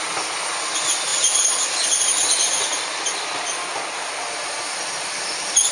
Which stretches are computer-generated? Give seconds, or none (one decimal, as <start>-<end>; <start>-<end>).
none